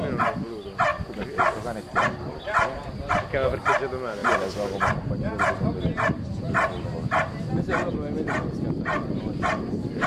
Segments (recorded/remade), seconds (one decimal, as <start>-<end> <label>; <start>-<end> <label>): 0.0-10.1 recorded